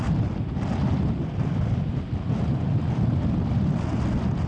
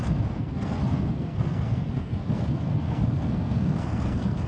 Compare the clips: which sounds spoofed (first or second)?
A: second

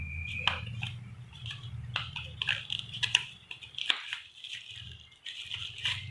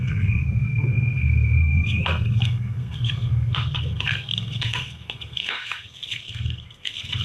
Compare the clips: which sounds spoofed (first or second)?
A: second